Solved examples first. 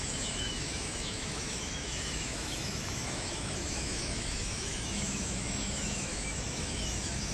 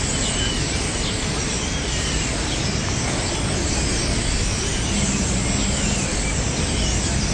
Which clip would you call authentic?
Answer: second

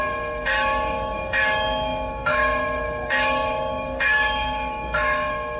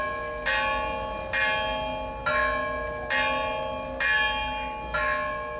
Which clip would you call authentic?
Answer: second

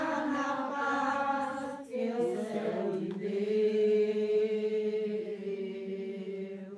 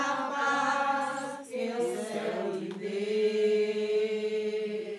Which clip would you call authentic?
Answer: second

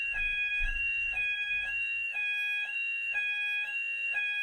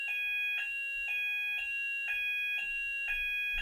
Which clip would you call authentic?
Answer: second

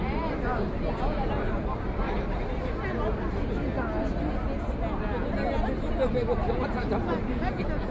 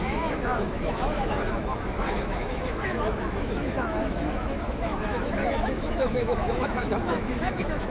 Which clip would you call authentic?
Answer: first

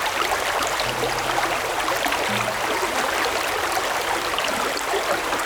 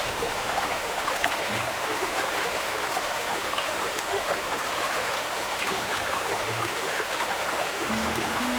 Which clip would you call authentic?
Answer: first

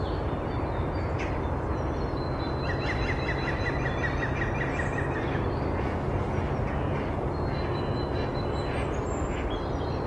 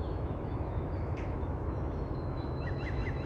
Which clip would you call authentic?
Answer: first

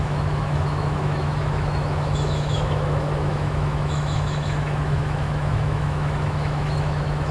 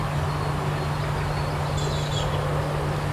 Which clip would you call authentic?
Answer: second